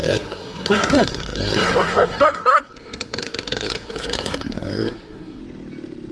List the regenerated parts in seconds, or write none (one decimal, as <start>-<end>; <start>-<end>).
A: 0.0-5.4